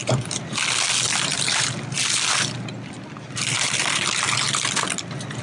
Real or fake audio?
real